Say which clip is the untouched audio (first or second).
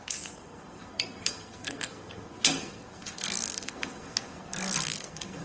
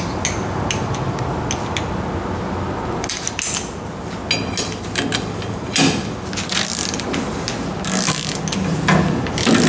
second